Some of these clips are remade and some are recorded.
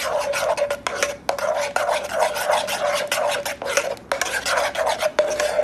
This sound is recorded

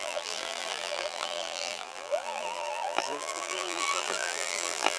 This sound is remade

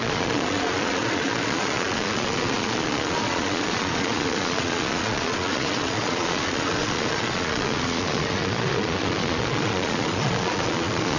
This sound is remade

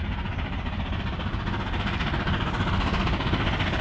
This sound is recorded